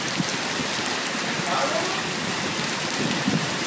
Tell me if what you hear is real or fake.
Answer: real